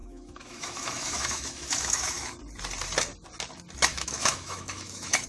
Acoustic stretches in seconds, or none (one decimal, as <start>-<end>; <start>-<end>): 2.4-3.9